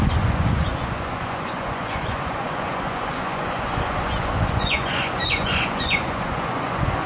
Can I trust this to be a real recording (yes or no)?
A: no